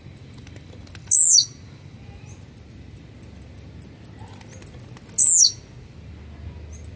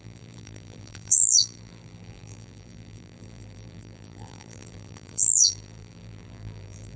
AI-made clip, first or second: second